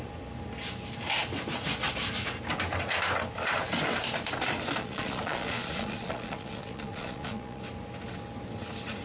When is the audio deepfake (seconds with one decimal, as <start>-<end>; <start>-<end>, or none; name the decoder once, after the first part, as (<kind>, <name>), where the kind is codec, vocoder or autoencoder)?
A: 4.8-7.6 (vocoder, Vocos)